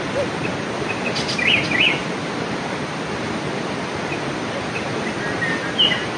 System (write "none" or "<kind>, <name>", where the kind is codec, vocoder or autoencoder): none